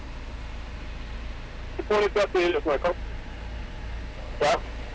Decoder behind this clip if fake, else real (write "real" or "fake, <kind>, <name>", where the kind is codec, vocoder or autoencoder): real